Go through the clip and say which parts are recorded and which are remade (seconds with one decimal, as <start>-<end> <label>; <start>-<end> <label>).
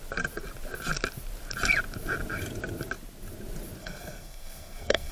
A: 0.0-3.8 recorded; 3.8-5.1 remade